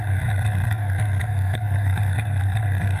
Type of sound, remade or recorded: remade